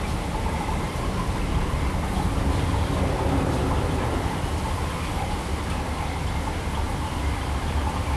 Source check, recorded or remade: recorded